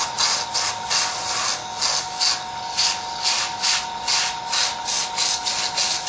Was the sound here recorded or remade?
recorded